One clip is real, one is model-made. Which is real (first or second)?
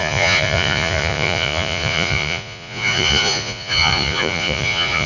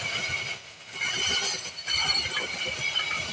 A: second